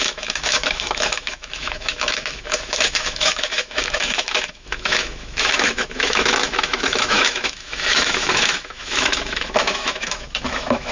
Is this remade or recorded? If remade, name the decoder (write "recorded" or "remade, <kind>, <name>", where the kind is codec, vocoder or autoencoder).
remade, autoencoder, DAC-VAE